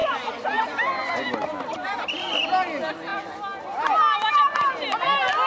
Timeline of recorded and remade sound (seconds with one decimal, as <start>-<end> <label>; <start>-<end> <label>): 0.0-5.5 recorded